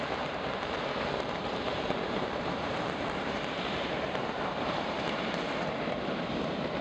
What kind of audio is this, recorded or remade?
remade